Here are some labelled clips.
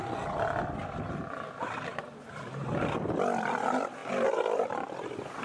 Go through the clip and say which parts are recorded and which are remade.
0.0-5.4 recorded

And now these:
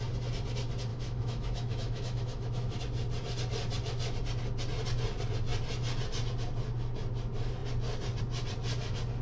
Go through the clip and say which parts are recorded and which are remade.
0.0-0.9 recorded; 0.9-2.8 remade; 2.8-9.2 recorded

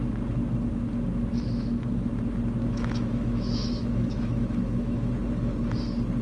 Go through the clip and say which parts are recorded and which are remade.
0.0-1.3 recorded; 1.3-2.1 remade; 2.1-2.6 recorded; 2.6-5.1 remade; 5.1-6.2 recorded

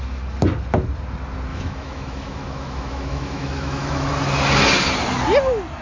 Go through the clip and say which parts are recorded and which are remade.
0.0-1.5 recorded; 1.5-4.1 remade; 4.1-5.8 recorded

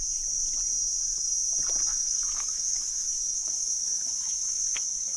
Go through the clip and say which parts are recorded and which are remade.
0.0-1.9 recorded; 1.9-5.2 remade

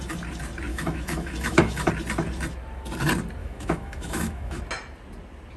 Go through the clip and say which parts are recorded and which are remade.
0.0-0.7 recorded; 0.7-1.9 remade; 1.9-3.4 recorded; 3.4-4.6 remade; 4.6-5.6 recorded

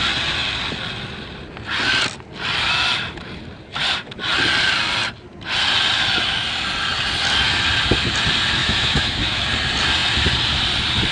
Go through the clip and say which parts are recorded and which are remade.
0.0-8.6 recorded; 8.6-9.4 remade; 9.4-11.1 recorded